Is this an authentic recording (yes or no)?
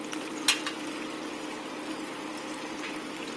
yes